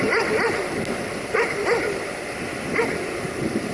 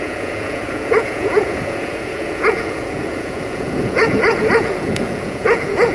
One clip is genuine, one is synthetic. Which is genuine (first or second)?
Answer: first